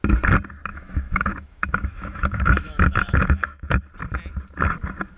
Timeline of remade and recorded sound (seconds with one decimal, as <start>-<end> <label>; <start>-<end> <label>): 0.0-0.7 recorded; 0.7-3.8 remade; 3.8-5.2 recorded